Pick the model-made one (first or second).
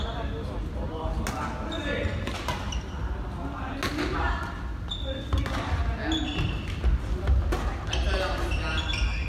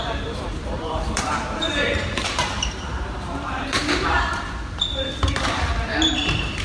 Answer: second